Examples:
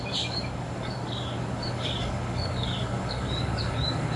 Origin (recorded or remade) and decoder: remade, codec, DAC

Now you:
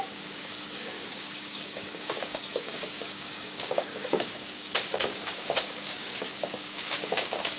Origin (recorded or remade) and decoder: remade, codec, DAC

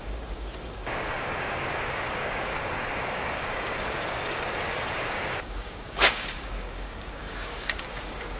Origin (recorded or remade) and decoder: remade, codec, DAC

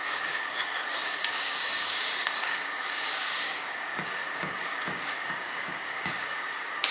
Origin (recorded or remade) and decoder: remade, codec, DAC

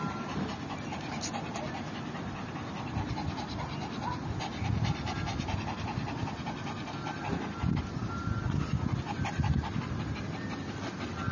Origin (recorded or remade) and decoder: recorded